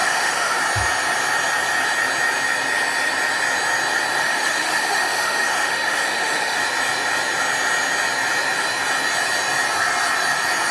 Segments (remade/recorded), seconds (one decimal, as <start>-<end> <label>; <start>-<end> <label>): 0.0-0.6 remade; 0.6-4.2 recorded; 4.2-6.6 remade; 6.6-10.7 recorded